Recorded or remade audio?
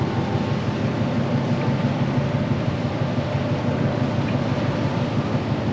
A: recorded